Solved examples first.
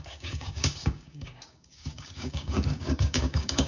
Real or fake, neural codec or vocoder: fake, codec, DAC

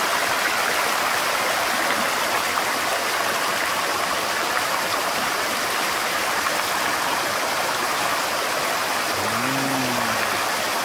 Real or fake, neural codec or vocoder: real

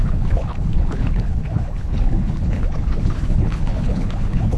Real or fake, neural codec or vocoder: fake, codec, HILCodec